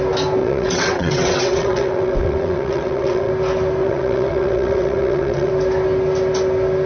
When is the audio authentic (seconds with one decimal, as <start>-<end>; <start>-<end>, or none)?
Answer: 0.0-0.4; 3.3-3.8; 5.5-6.9